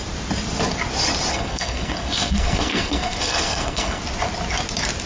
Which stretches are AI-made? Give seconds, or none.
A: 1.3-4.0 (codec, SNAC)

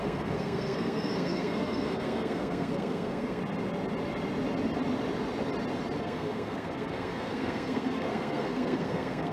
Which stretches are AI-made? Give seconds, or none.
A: 0.0-3.4 (codec, SNAC); 6.0-9.3

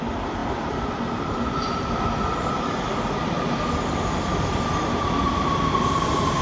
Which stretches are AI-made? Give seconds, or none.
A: none

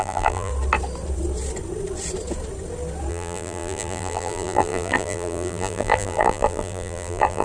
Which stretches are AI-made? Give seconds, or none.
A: 0.0-0.5 (vocoder, BigVGAN v2); 3.1-7.4

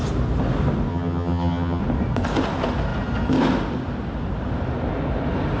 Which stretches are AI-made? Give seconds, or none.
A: 0.9-1.8 (vocoder, HiFi-GAN)

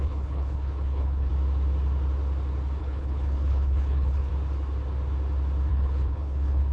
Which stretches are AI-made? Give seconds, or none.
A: 0.0-1.3 (codec, HILCodec); 2.8-4.3; 5.7-6.7

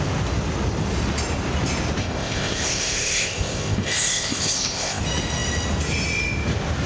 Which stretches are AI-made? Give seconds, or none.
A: 2.0-5.0 (codec, ZipCodec)

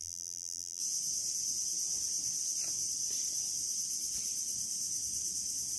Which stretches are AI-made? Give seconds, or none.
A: 0.0-0.8 (vocoder, BigVGAN v2)